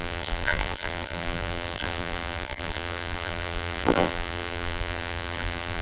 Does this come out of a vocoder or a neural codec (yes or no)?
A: yes